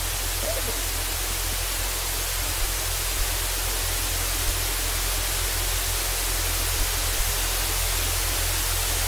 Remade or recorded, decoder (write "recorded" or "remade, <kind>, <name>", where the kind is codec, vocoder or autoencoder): recorded